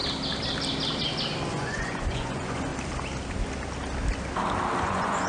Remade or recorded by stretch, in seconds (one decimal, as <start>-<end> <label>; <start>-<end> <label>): 0.0-1.5 recorded; 1.5-2.7 remade; 2.7-4.8 recorded; 4.8-5.3 remade